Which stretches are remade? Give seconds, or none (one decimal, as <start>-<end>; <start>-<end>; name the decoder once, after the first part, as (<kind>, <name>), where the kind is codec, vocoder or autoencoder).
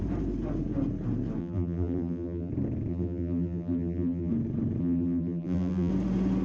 1.4-2.5 (vocoder, BigVGAN v2); 2.9-4.3; 4.8-5.9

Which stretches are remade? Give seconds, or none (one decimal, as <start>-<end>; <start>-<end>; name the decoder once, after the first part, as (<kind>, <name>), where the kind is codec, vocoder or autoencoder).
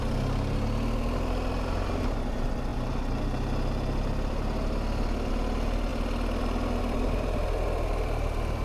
none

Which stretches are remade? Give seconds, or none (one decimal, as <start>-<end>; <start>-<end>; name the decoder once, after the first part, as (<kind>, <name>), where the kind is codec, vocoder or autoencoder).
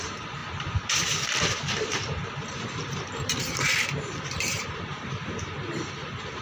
0.0-6.4 (vocoder, BigVGAN v2)